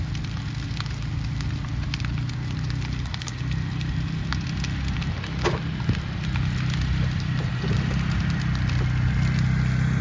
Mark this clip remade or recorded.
recorded